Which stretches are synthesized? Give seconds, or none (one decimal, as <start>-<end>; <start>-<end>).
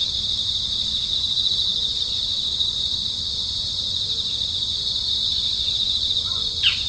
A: 1.1-6.9